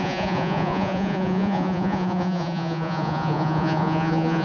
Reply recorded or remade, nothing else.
remade